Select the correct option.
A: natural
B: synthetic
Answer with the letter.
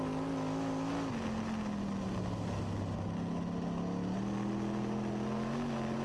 A